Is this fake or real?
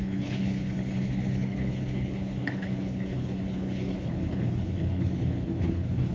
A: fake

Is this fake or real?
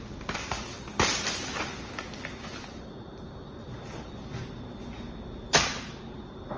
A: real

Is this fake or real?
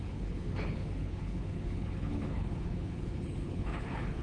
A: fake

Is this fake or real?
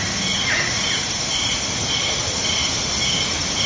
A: real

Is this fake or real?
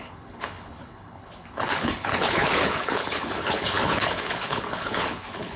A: fake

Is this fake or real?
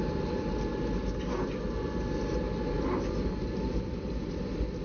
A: real